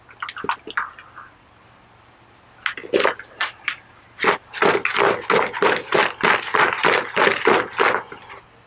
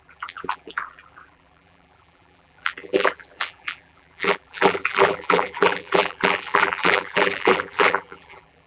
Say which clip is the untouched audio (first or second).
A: first